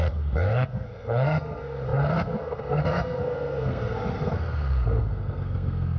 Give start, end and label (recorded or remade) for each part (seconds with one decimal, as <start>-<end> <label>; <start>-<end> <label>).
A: 0.0-6.0 remade